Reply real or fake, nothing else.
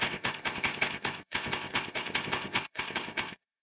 fake